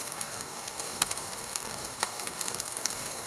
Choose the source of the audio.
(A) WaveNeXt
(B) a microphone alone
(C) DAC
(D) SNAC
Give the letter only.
C